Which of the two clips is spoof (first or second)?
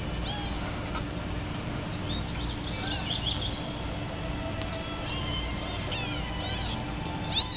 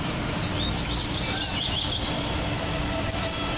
second